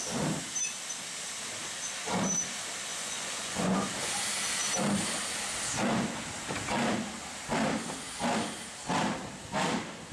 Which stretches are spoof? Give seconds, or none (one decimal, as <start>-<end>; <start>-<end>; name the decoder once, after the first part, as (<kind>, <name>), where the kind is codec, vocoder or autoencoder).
2.9-3.9 (vocoder, Vocos)